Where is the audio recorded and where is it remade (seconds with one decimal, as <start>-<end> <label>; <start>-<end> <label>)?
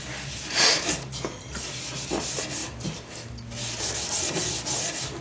0.0-5.2 recorded